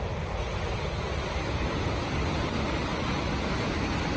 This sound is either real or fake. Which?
real